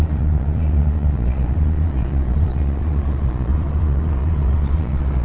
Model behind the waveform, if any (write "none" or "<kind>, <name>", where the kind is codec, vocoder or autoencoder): vocoder, Vocos